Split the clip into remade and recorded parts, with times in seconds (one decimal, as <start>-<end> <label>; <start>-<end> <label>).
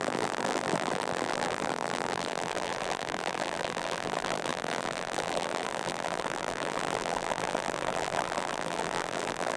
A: 0.0-9.6 remade